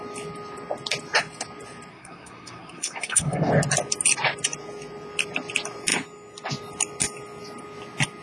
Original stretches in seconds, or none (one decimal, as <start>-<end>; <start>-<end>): 0.0-1.9; 3.5-8.2